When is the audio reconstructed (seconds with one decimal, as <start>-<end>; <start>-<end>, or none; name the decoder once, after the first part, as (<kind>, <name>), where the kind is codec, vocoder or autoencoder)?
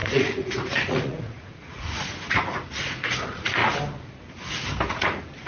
0.0-3.6 (vocoder, Vocos); 4.9-5.5